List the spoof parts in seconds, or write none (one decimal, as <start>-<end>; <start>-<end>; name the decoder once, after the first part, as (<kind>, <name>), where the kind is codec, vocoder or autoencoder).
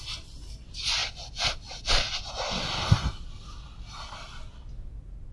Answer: none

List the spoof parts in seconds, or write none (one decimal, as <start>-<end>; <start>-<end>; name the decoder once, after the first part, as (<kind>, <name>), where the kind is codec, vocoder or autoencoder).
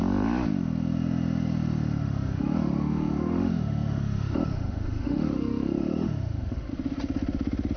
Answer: 2.0-6.7 (autoencoder, DAC-VAE)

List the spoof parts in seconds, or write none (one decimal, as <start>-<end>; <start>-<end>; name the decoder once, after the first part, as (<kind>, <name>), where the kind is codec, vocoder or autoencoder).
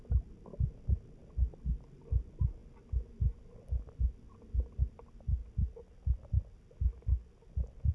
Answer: none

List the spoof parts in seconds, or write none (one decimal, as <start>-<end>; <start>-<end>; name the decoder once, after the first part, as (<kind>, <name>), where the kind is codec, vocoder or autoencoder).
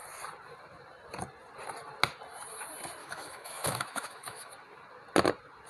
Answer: 3.0-4.5 (autoencoder, DAC-VAE)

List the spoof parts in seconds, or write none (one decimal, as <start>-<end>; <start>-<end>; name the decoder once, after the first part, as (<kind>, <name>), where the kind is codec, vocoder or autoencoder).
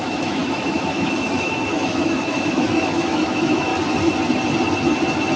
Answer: 0.0-3.7 (autoencoder, DAC-VAE)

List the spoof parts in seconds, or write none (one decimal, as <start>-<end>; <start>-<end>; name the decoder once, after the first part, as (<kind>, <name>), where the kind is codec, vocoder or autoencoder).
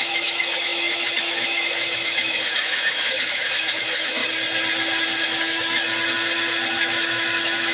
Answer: 0.0-4.2 (autoencoder, DAC-VAE); 5.2-5.8; 6.7-7.7